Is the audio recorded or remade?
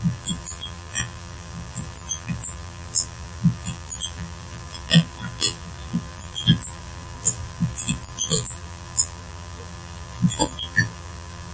remade